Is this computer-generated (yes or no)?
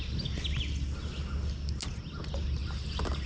no